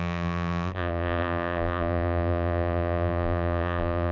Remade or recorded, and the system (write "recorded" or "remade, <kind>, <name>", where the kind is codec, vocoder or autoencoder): remade, vocoder, BigVGAN v2